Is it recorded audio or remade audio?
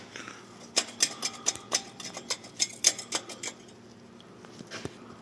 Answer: recorded